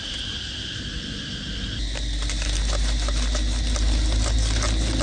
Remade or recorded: recorded